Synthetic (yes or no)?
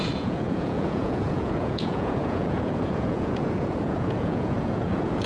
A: yes